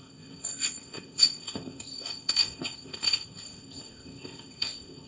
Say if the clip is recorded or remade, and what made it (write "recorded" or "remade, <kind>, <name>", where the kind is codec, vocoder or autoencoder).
remade, codec, ZipCodec